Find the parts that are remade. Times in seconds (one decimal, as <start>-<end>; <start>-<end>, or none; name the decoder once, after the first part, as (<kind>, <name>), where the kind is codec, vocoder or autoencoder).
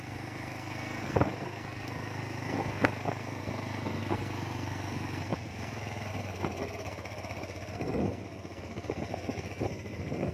0.0-10.3 (codec, SNAC)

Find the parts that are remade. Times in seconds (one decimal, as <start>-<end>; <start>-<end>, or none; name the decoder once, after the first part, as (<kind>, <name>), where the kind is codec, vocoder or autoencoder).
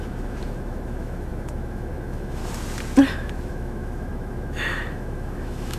0.0-2.4 (autoencoder, DAC-VAE); 3.1-5.8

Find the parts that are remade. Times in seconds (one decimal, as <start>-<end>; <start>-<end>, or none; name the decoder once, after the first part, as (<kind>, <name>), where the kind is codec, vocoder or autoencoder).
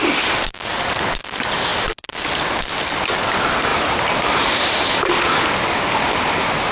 none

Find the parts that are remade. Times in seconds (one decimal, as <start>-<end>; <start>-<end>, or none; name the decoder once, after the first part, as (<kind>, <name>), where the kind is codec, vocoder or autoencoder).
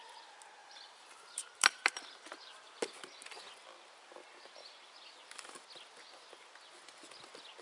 0.6-2.5 (vocoder, BigVGAN v2)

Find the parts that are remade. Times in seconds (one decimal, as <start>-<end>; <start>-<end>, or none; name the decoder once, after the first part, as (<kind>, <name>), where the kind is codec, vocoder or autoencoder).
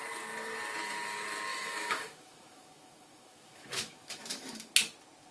1.5-4.7 (autoencoder, DAC-VAE)